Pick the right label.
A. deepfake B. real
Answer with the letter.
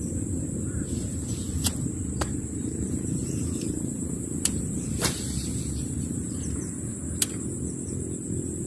A